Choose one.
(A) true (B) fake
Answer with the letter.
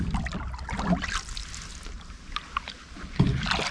A